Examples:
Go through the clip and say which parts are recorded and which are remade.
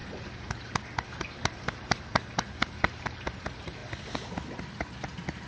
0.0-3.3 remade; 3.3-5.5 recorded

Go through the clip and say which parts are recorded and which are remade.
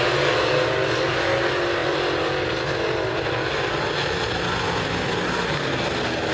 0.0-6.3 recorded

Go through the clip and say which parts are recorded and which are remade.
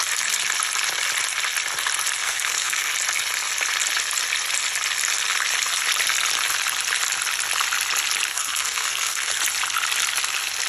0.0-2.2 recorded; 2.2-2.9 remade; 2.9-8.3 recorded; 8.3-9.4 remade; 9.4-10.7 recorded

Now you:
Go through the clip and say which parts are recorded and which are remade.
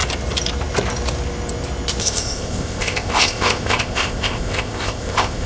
0.0-2.0 recorded; 2.0-5.5 remade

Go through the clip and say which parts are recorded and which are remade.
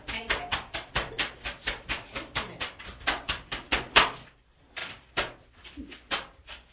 0.0-6.7 recorded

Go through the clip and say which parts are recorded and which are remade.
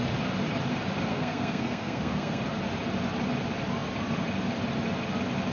0.0-1.1 recorded; 1.1-2.4 remade; 2.4-5.5 recorded